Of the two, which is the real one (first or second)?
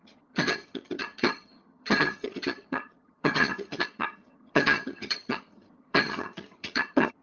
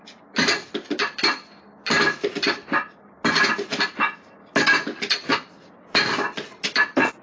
second